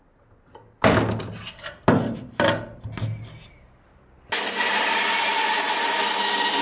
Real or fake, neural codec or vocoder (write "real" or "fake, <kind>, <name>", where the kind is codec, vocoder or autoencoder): real